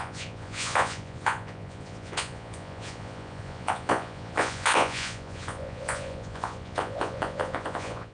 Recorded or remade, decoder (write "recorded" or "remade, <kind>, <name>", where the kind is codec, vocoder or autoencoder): remade, vocoder, Vocos